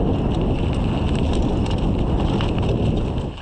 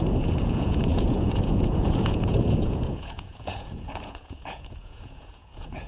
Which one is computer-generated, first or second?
second